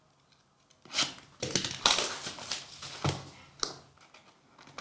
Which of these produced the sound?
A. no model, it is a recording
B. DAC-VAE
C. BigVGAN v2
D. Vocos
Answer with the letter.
A